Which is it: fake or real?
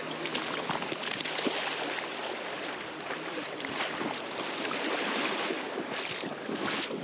fake